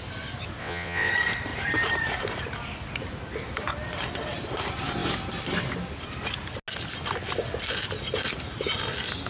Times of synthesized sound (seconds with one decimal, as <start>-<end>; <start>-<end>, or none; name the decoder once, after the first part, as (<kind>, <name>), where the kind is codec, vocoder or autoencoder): 0.6-1.1 (vocoder, WaveNeXt)

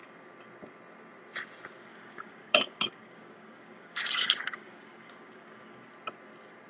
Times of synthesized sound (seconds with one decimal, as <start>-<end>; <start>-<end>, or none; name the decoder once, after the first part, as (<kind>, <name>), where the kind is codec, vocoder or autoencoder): 1.9-5.9 (codec, DAC)

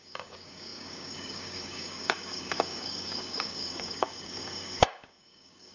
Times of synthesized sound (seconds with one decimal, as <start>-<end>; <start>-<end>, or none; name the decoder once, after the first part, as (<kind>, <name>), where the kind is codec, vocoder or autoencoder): 0.0-5.7 (codec, DAC)

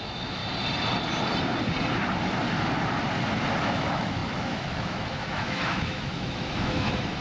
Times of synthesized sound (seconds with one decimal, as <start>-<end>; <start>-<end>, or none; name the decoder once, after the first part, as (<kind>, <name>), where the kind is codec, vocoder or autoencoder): 0.0-0.4 (autoencoder, DAC-VAE); 3.7-7.2

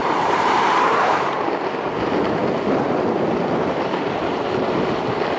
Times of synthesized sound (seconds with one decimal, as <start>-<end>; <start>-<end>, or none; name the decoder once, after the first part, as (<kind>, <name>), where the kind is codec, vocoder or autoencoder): 0.0-2.4 (vocoder, BigVGAN v2)

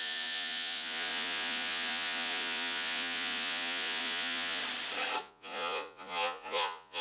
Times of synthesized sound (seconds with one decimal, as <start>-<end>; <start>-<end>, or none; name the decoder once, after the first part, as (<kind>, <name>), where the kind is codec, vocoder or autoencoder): 0.0-4.6 (vocoder, Vocos); 5.2-7.0

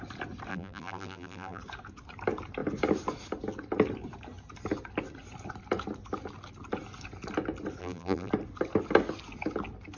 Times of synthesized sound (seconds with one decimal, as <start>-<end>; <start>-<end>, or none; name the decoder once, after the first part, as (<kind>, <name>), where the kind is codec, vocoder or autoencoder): 0.5-1.6 (vocoder, BigVGAN v2); 7.8-8.3

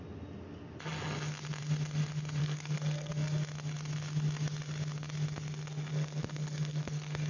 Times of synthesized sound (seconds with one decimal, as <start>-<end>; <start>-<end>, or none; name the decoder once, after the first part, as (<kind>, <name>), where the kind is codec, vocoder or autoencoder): 2.4-3.1 (codec, SNAC); 5.9-7.3